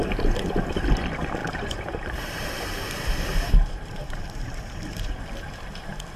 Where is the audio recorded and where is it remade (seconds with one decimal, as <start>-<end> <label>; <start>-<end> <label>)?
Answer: 0.0-1.4 recorded; 1.4-5.1 remade; 5.1-6.2 recorded